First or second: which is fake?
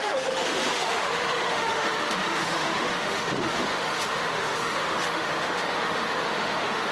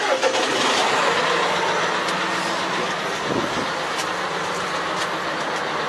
first